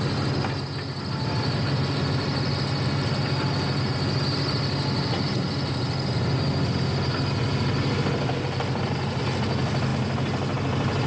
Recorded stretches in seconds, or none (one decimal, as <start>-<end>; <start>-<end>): 0.0-11.1